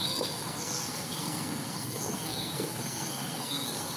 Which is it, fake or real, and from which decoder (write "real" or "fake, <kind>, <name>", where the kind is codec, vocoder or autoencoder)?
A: fake, codec, SNAC